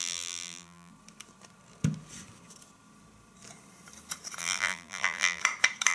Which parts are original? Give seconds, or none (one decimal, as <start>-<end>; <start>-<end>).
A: 0.9-4.4; 5.4-5.9